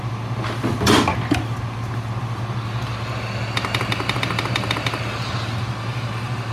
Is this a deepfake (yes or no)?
no